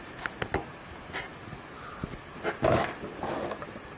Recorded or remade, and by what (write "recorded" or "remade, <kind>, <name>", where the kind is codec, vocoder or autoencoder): recorded